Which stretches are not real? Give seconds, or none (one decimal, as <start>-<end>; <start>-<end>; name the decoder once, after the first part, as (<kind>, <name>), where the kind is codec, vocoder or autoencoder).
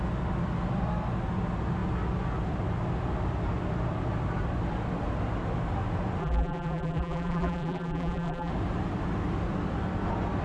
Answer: 6.2-8.5 (vocoder, BigVGAN v2)